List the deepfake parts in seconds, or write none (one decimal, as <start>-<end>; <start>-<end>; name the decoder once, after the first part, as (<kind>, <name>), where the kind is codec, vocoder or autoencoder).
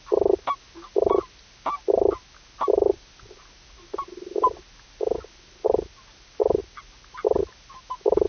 none